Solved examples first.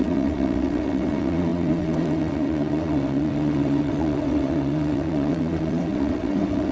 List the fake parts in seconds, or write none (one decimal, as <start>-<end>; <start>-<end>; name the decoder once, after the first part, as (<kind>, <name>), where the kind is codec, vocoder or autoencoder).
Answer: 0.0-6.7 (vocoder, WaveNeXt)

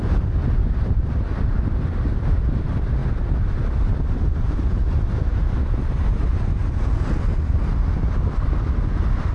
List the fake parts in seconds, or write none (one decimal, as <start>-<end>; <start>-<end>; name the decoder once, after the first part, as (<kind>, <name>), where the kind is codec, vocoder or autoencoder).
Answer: none

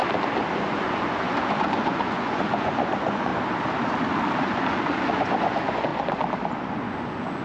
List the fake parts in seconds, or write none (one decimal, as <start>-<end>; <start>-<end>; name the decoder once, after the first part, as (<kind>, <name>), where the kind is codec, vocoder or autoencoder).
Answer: 0.6-3.3 (vocoder, Vocos); 4.4-5.9; 6.6-7.4